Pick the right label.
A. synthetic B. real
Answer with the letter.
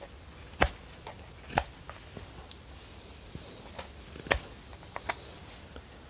B